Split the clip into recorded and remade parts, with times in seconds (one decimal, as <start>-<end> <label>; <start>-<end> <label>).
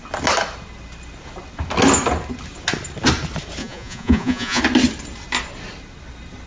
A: 0.0-3.6 recorded; 3.6-4.6 remade; 4.6-6.5 recorded